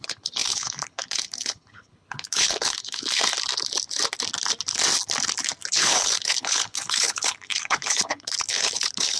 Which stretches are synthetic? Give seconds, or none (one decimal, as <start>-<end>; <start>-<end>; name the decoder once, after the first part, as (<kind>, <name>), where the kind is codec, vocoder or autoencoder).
0.0-3.2 (codec, HILCodec); 5.7-9.2